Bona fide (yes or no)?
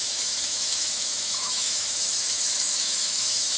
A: no